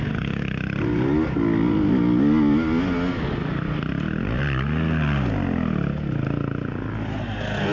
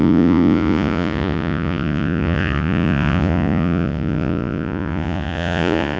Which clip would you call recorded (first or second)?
first